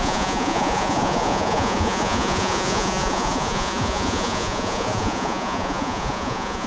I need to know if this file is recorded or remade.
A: remade